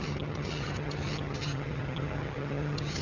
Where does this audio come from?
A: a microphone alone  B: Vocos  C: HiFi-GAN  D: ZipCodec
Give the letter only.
C